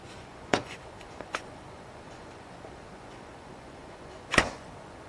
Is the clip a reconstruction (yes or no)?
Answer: yes